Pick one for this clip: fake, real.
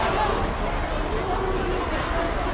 real